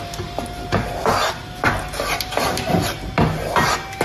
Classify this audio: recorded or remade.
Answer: recorded